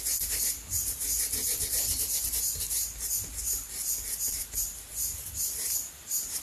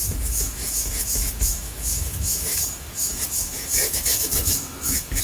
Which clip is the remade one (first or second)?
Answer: second